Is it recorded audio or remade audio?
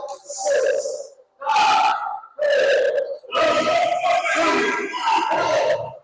recorded